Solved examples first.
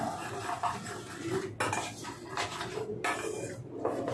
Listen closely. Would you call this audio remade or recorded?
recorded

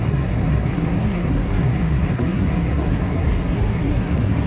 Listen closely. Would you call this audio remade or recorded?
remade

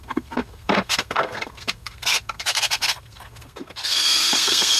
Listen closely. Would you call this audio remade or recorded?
remade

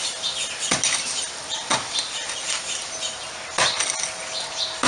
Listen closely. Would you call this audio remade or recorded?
recorded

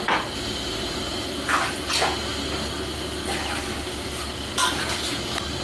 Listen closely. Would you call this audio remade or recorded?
recorded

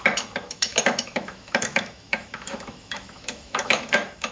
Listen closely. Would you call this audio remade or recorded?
remade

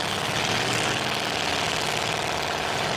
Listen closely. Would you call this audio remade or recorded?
recorded